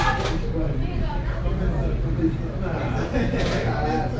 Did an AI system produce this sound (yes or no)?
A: yes